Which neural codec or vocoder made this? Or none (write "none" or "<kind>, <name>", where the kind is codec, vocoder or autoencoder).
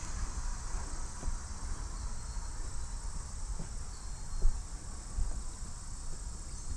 none